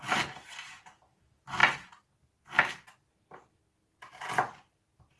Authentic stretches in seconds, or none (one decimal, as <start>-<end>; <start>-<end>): 0.0-5.2